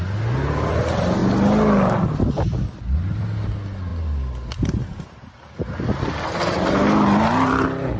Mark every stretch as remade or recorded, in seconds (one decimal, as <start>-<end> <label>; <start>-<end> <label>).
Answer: 0.0-8.0 recorded